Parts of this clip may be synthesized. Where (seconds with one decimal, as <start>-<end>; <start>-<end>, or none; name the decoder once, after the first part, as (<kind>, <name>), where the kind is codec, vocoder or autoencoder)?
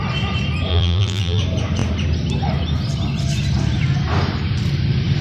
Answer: 0.7-1.4 (vocoder, BigVGAN v2)